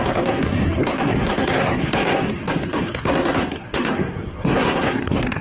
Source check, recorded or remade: remade